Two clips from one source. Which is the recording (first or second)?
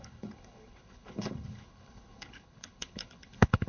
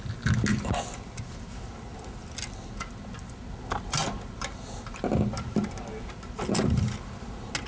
second